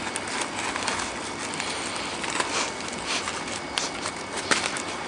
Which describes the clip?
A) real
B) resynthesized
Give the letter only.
A